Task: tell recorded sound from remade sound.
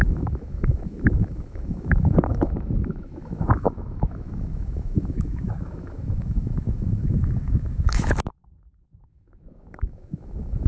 remade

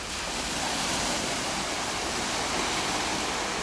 recorded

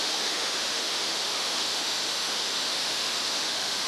remade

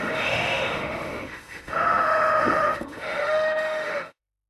remade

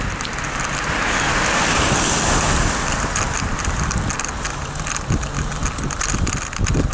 recorded